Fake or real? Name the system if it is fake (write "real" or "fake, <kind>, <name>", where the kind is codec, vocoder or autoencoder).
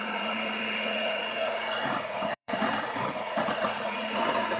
fake, vocoder, Vocos